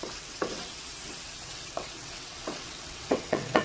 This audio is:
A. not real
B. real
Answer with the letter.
A